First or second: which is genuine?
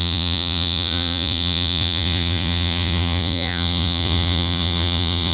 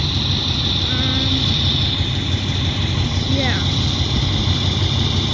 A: second